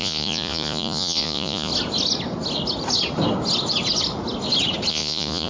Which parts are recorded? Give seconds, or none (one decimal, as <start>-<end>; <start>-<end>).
1.7-4.9